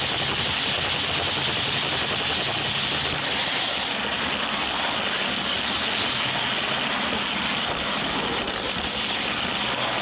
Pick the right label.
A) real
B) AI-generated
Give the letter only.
A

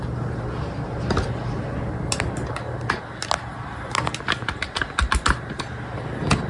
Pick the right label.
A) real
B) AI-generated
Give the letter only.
A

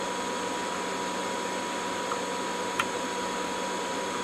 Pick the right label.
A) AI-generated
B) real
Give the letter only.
B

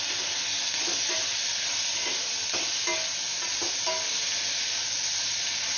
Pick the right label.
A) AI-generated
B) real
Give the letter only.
B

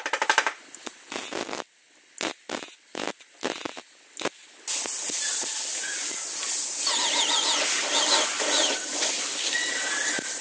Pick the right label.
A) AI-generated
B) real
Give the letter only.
B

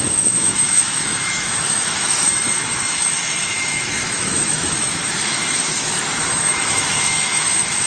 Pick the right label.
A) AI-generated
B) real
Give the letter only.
A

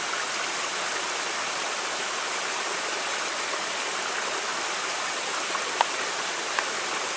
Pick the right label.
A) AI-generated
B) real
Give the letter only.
B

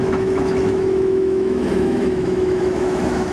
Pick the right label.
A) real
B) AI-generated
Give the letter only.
B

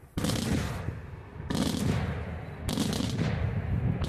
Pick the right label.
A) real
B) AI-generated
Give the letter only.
A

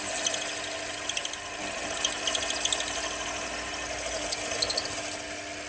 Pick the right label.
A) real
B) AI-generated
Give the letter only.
A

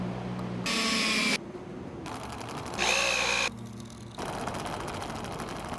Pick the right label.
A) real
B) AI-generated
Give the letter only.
A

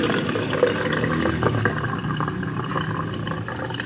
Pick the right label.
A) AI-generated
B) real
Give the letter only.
B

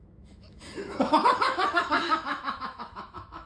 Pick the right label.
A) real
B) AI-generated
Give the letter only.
B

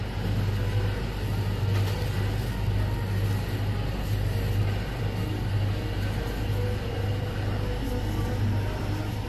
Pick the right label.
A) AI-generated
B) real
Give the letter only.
B